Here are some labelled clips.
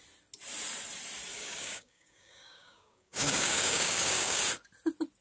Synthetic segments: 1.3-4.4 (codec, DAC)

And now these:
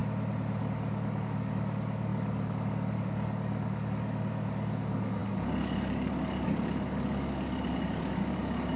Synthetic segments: 0.6-8.8 (codec, DAC)

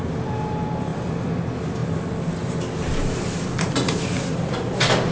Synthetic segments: none

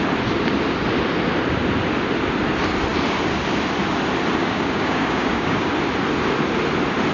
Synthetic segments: 4.4-5.7 (codec, DAC)